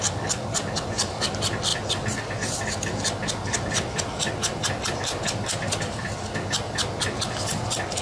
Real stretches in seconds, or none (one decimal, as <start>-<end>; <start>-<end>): 0.0-8.0